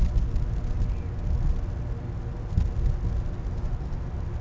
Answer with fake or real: real